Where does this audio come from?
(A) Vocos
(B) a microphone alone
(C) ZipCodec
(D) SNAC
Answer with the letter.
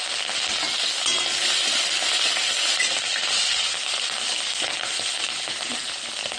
B